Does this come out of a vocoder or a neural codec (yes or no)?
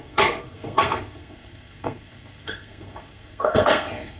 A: yes